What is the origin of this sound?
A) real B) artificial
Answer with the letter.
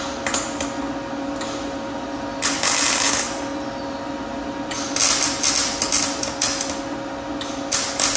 A